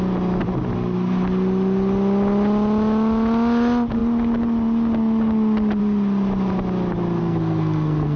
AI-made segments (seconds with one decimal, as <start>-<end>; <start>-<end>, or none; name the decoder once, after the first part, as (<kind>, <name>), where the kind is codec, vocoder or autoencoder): 7.2-8.2 (codec, SNAC)